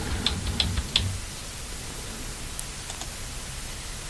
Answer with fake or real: real